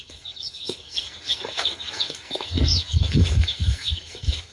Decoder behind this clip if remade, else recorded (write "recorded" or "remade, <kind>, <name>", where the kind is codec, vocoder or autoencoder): remade, codec, SNAC